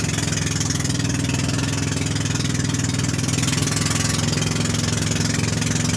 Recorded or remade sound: recorded